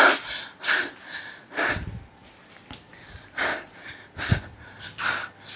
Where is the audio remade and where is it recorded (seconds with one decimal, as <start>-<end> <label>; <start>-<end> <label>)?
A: 0.0-5.6 recorded